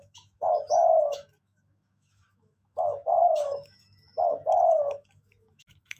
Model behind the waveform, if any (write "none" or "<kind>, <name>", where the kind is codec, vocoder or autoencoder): autoencoder, DAC-VAE